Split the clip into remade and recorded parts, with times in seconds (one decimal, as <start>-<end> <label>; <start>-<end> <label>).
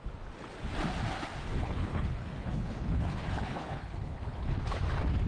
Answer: 0.0-1.4 recorded; 1.4-4.6 remade; 4.6-5.3 recorded